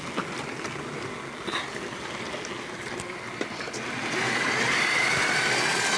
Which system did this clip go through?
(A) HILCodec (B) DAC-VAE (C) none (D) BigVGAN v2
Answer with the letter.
C